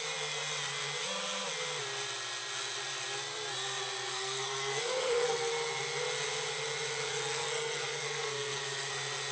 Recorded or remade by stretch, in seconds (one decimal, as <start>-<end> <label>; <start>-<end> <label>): 0.0-4.1 recorded; 4.1-5.5 remade; 5.5-7.1 recorded; 7.1-8.9 remade; 8.9-9.3 recorded